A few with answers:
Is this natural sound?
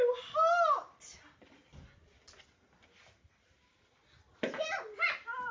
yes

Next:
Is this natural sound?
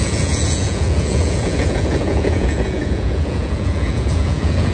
no